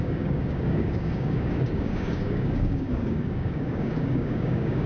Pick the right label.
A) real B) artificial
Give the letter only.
B